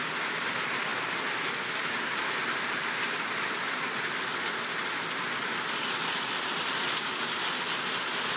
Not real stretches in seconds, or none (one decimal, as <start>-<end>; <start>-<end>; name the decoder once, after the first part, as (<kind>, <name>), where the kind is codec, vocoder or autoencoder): none